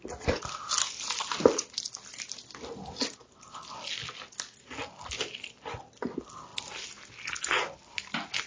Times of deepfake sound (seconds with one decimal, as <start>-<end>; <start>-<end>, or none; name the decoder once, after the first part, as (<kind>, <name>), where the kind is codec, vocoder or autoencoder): none